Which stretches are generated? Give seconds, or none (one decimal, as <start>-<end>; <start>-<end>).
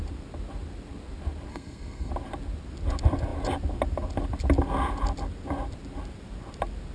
1.5-2.1